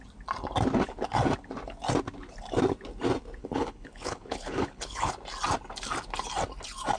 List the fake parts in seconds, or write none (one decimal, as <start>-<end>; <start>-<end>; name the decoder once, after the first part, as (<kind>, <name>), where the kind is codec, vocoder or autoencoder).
3.4-5.1 (codec, HILCodec)